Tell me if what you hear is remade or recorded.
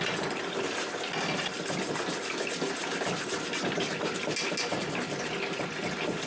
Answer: recorded